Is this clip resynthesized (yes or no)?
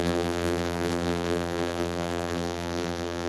yes